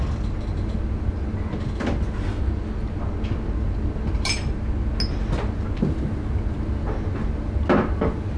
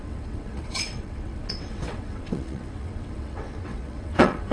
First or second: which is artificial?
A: second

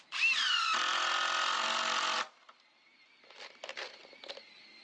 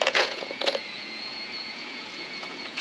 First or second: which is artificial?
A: second